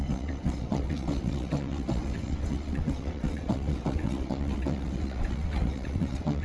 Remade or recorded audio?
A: remade